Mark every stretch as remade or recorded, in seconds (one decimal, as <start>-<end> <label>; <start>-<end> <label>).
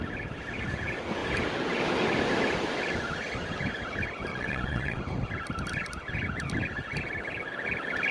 0.0-4.3 recorded; 4.3-5.0 remade; 5.0-8.1 recorded